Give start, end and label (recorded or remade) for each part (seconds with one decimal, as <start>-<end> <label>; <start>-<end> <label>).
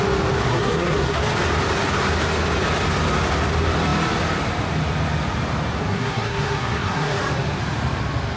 0.0-0.5 recorded; 0.5-1.2 remade; 1.2-5.8 recorded; 5.8-7.2 remade; 7.2-8.4 recorded